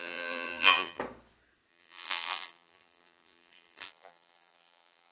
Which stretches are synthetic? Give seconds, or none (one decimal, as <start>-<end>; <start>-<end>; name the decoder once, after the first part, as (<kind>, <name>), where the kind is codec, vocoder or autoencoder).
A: 0.0-1.0 (vocoder, BigVGAN v2); 1.7-5.1